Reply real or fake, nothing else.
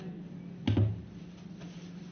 real